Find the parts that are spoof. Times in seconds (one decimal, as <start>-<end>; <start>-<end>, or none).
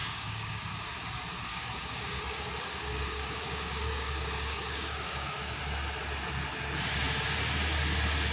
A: 0.0-0.7; 1.5-5.6